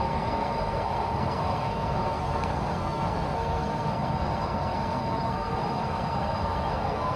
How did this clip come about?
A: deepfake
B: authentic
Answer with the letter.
A